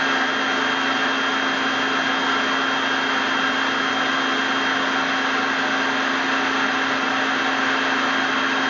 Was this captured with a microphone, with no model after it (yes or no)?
yes